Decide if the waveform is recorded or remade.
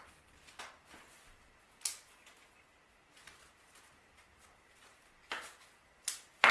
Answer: recorded